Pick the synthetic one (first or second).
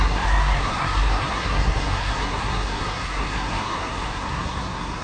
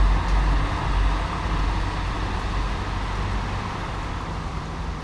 first